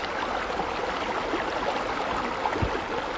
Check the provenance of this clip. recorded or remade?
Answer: recorded